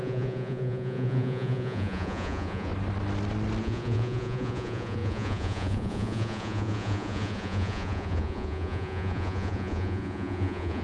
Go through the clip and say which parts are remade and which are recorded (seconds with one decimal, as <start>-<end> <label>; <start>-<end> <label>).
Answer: 0.0-2.7 remade; 2.7-3.6 recorded; 3.6-10.8 remade